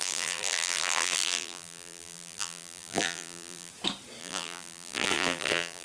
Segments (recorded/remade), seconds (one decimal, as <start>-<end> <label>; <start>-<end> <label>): 0.0-3.7 remade; 3.7-4.2 recorded; 4.2-5.8 remade